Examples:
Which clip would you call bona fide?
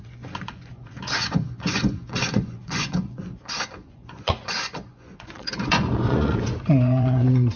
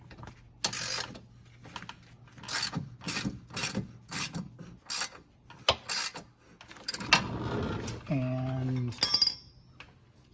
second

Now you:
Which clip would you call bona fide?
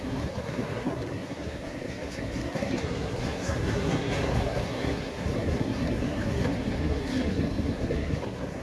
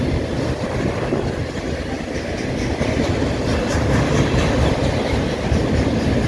second